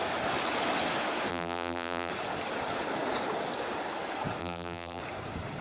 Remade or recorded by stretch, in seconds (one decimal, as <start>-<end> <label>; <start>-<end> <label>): 0.0-1.3 recorded; 1.3-2.1 remade; 2.1-4.4 recorded; 4.4-5.0 remade; 5.0-5.6 recorded